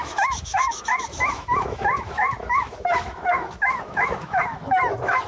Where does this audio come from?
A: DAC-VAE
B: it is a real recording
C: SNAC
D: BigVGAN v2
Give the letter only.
A